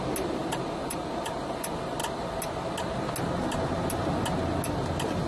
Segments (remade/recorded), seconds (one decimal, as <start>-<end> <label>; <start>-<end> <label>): 0.0-5.3 recorded